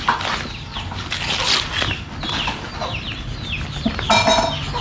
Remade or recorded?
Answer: recorded